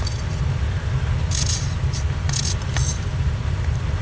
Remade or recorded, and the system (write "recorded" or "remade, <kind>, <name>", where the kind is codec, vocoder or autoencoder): recorded